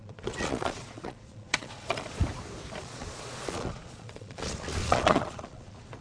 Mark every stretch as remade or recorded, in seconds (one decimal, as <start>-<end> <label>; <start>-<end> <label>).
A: 0.0-2.2 remade; 2.2-2.8 recorded; 2.8-6.0 remade